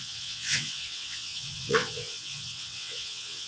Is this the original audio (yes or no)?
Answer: no